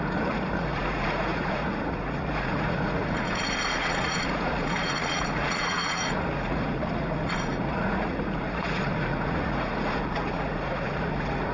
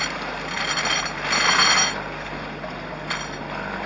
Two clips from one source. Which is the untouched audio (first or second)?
second